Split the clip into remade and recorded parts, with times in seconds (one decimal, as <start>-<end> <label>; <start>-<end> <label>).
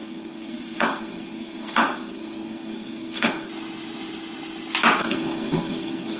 0.0-3.5 remade; 3.5-5.0 recorded; 5.0-6.2 remade